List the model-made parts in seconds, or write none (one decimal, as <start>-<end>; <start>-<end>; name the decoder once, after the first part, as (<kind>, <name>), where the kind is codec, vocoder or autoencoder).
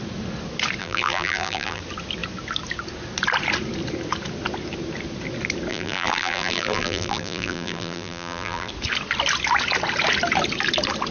0.8-1.8 (vocoder, BigVGAN v2); 5.7-8.7